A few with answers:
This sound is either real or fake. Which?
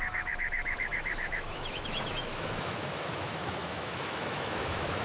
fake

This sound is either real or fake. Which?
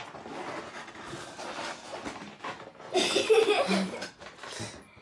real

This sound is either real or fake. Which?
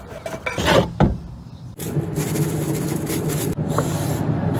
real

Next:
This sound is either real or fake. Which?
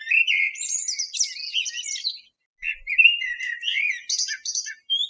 real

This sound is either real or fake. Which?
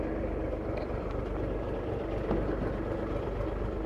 real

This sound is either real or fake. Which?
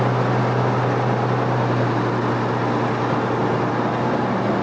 real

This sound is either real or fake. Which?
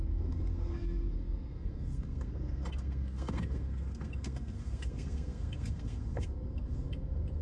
fake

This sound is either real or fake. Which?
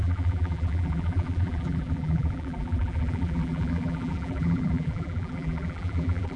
fake